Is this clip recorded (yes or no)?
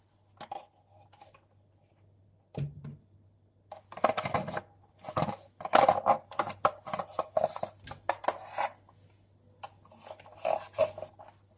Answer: yes